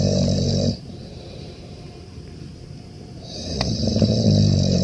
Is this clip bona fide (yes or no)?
no